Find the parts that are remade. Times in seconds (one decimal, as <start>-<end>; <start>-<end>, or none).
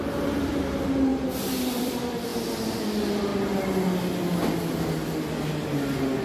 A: 1.1-1.9